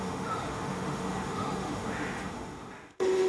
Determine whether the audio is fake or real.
fake